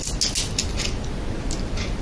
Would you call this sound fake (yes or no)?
no